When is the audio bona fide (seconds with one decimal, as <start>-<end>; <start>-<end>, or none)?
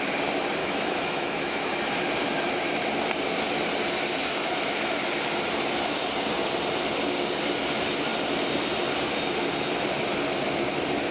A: 0.0-0.6; 1.9-11.1